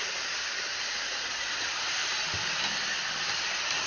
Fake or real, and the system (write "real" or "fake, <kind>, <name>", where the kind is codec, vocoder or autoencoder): real